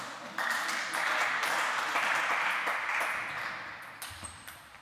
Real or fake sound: real